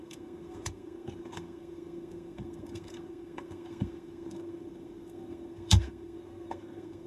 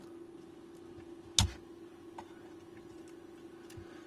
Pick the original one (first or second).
second